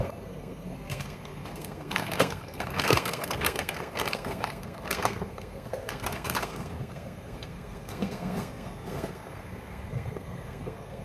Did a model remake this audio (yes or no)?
yes